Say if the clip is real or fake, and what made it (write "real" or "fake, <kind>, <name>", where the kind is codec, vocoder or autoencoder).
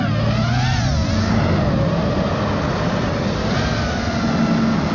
real